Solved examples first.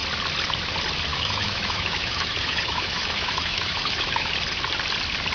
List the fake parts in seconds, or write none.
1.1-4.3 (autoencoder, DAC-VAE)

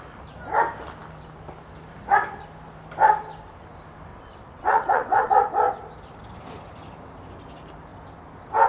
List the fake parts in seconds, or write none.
4.1-5.3 (vocoder, WaveNeXt)

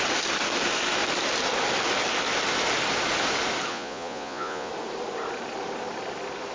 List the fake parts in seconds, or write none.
3.7-4.7 (vocoder, Vocos)